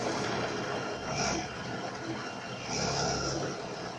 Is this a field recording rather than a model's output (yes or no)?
yes